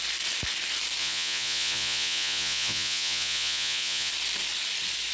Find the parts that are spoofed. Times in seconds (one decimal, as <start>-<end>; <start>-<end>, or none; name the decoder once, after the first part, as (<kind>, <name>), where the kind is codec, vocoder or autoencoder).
1.0-4.1 (vocoder, Vocos)